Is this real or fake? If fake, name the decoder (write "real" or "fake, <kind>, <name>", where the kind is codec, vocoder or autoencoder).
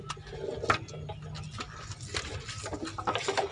real